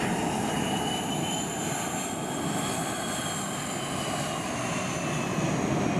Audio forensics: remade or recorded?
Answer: recorded